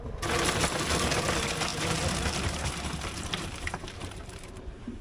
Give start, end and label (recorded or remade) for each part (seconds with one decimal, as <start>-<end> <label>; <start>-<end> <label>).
0.0-1.7 recorded; 1.7-5.0 remade